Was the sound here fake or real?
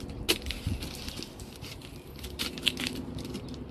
real